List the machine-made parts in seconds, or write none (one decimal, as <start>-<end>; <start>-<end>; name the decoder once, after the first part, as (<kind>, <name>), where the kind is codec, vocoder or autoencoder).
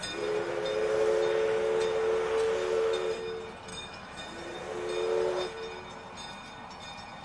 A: 3.7-4.2 (autoencoder, DAC-VAE)